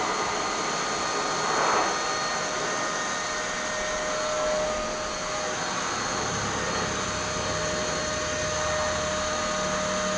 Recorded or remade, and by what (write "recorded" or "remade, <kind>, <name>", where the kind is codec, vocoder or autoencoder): recorded